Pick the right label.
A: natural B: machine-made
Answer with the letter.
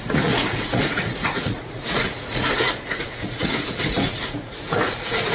B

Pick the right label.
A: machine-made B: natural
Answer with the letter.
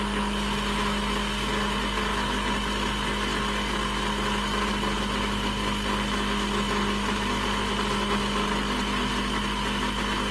B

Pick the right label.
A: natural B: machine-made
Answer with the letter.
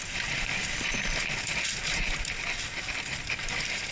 A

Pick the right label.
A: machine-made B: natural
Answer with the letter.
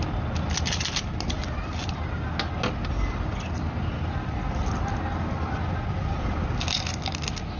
B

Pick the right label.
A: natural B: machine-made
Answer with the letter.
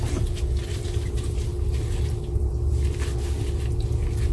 A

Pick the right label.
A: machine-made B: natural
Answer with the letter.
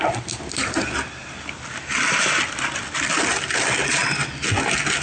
B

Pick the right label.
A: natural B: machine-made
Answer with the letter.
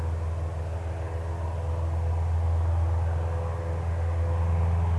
A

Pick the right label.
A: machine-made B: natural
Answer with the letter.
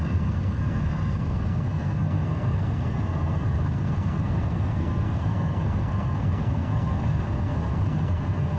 A